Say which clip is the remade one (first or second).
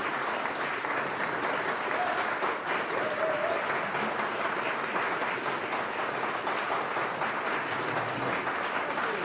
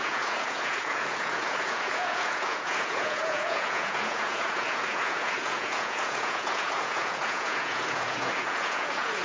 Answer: second